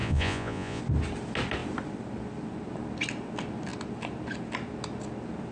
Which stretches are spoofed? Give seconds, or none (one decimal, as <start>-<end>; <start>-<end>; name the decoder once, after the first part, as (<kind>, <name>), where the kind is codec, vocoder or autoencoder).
0.0-0.8 (vocoder, Vocos)